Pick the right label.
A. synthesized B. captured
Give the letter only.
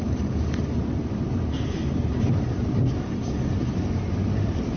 A